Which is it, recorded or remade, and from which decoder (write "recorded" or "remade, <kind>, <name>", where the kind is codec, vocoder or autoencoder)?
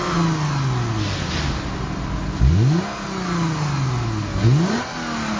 recorded